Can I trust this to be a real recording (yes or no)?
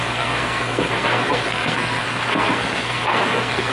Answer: no